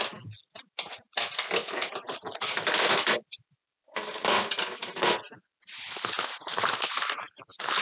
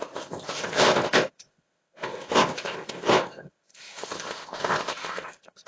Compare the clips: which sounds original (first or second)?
first